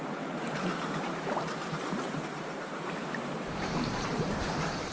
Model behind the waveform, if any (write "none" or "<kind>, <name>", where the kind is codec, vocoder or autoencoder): vocoder, BigVGAN v2